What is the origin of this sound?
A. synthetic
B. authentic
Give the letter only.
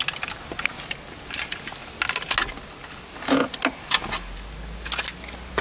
B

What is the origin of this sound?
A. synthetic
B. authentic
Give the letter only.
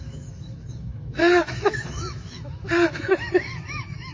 A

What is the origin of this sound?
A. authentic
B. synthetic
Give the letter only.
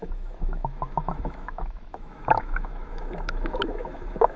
B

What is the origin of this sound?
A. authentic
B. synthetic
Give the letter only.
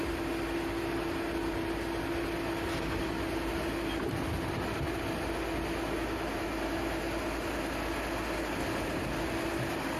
A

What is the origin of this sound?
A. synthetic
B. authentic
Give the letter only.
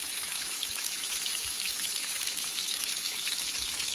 A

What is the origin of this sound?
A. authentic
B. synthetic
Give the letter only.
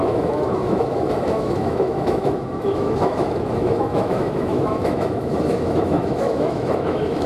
B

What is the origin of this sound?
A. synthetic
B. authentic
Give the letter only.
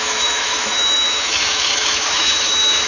A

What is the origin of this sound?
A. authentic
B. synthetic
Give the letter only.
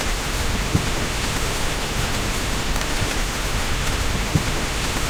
B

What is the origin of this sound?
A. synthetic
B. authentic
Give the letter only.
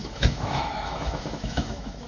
A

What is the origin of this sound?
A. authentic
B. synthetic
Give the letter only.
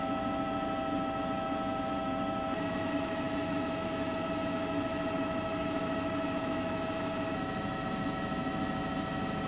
B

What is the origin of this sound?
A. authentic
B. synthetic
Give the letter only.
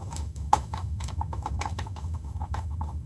B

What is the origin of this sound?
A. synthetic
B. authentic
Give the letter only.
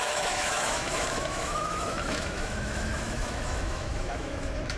A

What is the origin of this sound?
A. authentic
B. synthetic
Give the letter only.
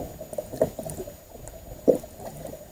A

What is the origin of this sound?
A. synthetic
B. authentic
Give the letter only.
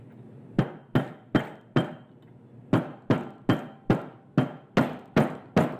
B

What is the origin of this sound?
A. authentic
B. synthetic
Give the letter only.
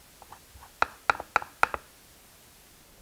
A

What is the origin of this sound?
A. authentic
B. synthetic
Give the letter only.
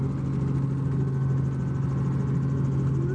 A